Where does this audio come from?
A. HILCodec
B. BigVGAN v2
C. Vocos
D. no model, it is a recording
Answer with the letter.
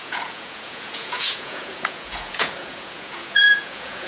C